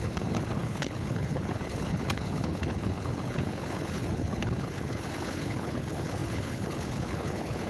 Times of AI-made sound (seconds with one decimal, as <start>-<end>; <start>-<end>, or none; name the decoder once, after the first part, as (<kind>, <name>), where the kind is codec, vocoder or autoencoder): 0.0-7.7 (codec, HILCodec)